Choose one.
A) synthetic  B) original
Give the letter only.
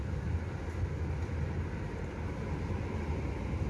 B